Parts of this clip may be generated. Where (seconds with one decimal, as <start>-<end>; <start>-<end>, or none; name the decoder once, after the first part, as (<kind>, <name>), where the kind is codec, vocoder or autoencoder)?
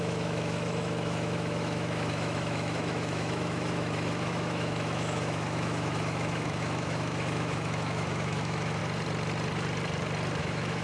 0.0-8.8 (autoencoder, DAC-VAE); 10.4-10.8